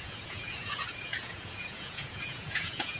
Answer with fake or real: fake